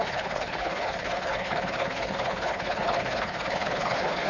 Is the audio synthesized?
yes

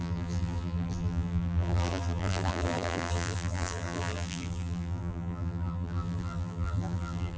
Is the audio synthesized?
yes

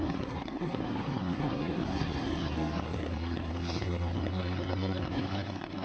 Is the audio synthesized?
yes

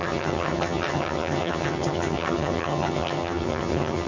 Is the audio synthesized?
yes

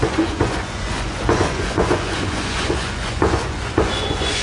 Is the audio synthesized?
yes